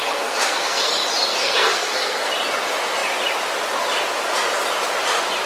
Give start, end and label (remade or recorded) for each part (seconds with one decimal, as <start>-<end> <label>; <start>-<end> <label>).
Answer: 0.0-0.9 remade; 0.9-1.3 recorded; 1.3-2.3 remade; 2.3-5.5 recorded